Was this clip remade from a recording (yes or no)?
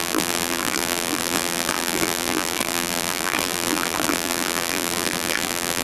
yes